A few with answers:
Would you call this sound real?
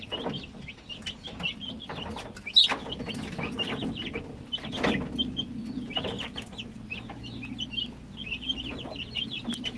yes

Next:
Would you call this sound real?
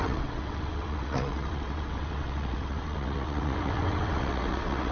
no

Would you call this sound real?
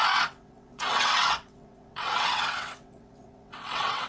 no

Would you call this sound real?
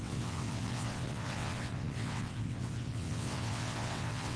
no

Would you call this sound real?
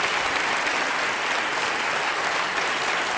yes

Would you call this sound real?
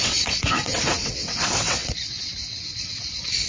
no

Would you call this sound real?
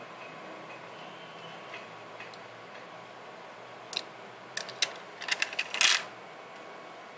yes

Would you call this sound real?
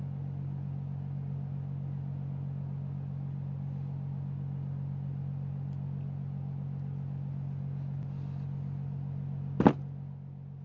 yes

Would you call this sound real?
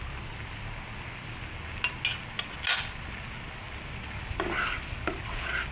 yes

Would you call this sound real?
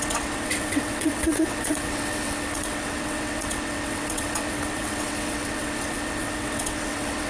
no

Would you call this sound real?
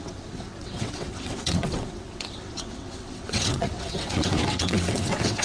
no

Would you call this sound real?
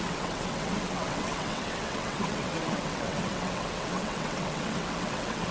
no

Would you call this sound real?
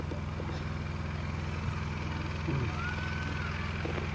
yes